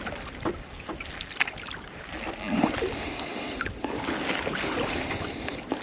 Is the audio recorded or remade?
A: recorded